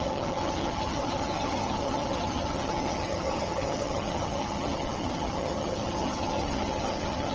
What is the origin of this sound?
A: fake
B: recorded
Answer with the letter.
A